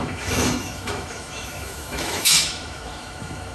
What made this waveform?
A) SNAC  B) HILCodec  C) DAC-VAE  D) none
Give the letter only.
C